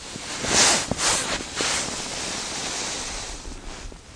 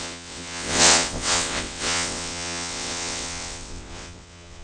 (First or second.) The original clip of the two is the first